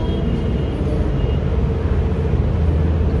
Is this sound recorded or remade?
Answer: recorded